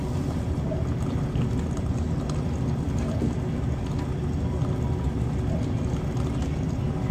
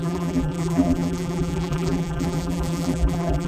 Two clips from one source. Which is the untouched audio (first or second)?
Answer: first